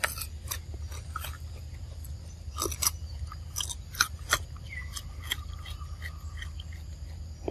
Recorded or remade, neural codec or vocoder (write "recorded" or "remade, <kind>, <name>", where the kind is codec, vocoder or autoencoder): recorded